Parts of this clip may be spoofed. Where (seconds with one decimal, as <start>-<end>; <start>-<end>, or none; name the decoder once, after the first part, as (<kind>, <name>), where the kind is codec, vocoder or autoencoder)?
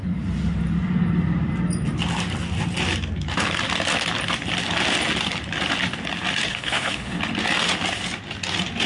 6.5-7.2 (codec, DAC)